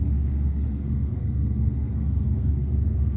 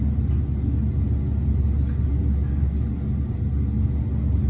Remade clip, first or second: first